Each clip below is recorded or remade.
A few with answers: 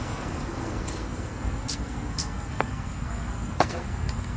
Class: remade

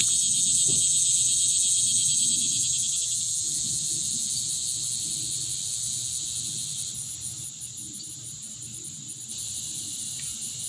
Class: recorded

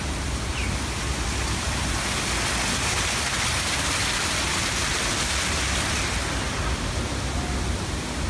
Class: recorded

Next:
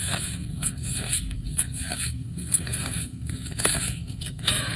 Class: remade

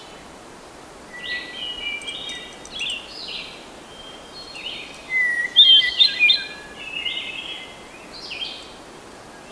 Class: recorded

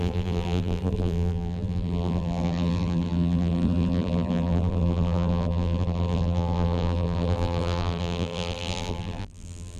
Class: remade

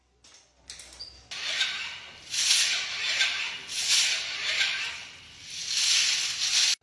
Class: recorded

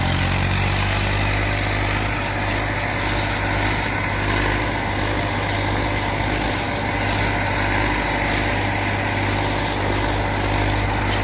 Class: recorded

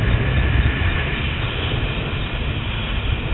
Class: recorded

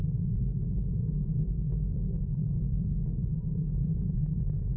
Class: remade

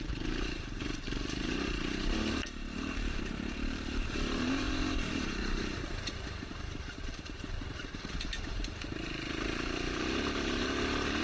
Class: remade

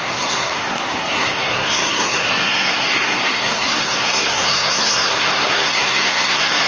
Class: remade